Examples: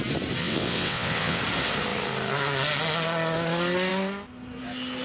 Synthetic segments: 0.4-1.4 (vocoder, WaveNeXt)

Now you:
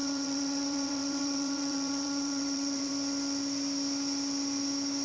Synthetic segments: 0.0-2.9 (vocoder, WaveNeXt)

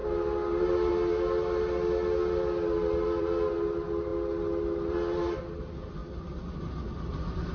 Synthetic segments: none

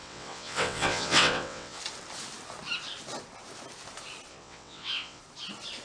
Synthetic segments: 0.0-1.8 (vocoder, WaveNeXt); 4.3-5.2

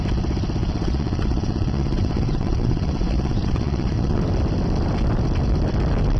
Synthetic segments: 0.6-4.2 (vocoder, WaveNeXt)

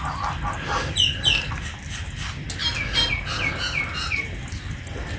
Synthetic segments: none

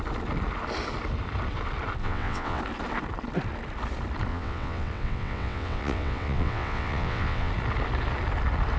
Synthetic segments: 2.0-2.6 (vocoder, WaveNeXt); 4.3-7.5

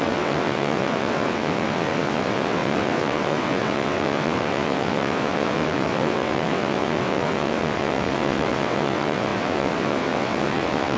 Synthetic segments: 0.0-11.0 (vocoder, WaveNeXt)